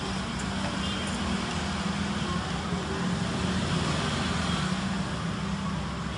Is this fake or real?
real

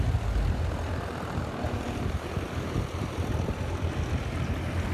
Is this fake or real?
real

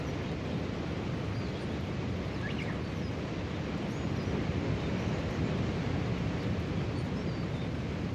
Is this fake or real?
real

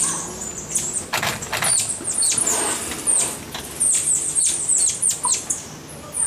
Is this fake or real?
real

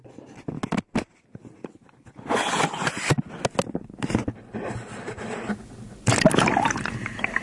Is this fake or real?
real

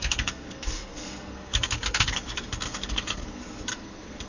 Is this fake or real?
fake